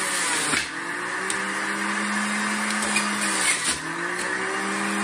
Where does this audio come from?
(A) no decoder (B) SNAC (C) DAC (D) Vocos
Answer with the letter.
A